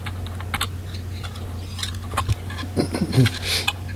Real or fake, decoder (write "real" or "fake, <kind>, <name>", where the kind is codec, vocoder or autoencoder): real